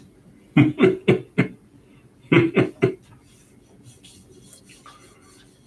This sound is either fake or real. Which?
real